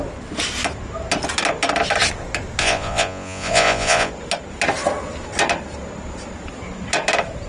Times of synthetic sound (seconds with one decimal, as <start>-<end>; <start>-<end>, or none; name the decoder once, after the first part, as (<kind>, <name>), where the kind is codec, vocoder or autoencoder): 2.6-4.1 (vocoder, Vocos)